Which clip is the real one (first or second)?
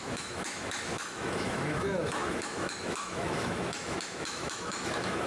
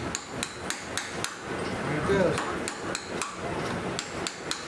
second